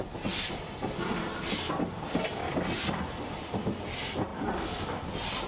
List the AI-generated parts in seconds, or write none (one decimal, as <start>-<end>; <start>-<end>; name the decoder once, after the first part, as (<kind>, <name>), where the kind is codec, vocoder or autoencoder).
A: none